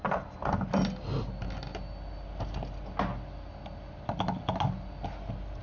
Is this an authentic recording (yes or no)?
yes